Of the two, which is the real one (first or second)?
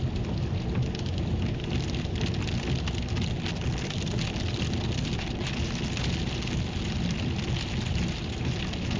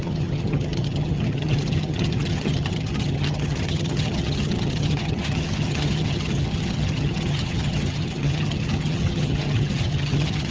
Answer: first